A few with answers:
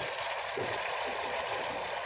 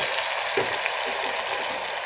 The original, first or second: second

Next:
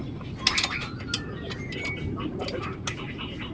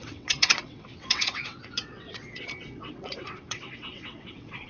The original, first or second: first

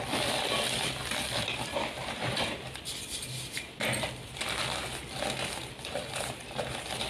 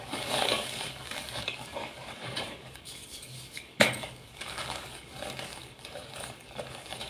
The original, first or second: first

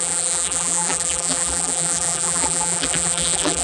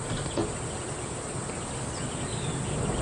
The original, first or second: second